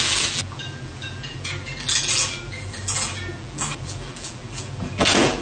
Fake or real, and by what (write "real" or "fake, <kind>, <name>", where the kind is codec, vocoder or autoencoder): fake, vocoder, BigVGAN v2